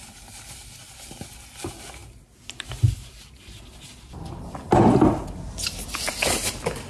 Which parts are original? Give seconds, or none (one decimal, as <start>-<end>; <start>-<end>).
0.0-6.9